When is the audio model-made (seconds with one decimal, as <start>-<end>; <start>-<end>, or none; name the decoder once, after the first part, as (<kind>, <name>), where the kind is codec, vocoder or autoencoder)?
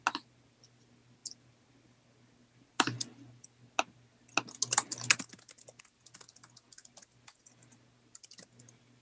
none